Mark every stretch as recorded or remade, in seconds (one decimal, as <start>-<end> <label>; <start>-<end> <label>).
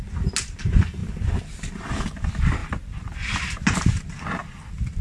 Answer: 0.0-1.0 recorded; 1.0-1.7 remade; 1.7-2.6 recorded; 2.6-3.3 remade; 3.3-4.4 recorded; 4.4-5.0 remade